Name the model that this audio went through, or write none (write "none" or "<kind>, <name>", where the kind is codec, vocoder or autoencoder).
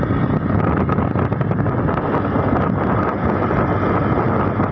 none